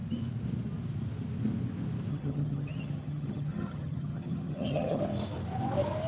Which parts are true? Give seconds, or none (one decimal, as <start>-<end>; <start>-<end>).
0.0-2.1; 5.0-6.1